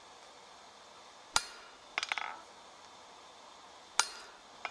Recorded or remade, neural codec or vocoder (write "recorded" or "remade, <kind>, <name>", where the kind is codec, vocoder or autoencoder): recorded